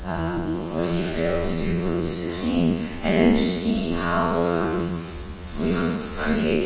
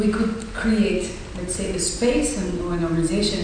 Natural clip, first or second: second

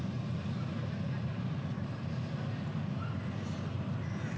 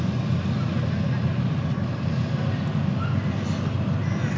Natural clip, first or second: second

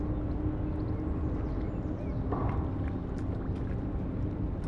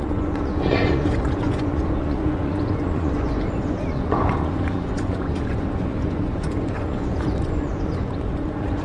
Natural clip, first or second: first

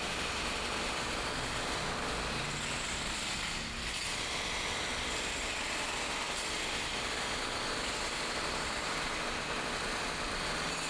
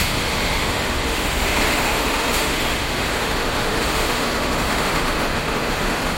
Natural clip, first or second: first